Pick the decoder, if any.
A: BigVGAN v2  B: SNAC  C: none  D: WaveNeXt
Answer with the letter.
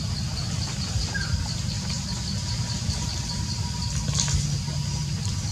C